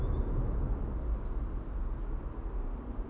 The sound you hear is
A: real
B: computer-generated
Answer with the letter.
A